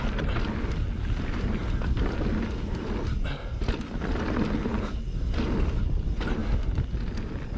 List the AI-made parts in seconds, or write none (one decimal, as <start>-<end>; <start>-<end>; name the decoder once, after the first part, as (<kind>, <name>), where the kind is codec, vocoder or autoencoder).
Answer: none